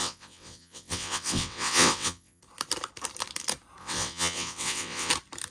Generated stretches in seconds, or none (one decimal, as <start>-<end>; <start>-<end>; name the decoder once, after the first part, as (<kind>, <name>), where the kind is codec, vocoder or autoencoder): 0.0-2.4 (vocoder, WaveNeXt); 3.8-5.1